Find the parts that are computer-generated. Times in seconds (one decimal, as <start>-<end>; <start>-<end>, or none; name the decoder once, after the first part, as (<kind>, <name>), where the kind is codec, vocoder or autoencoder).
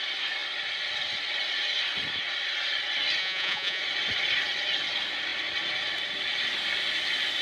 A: 3.2-3.8 (vocoder, Vocos)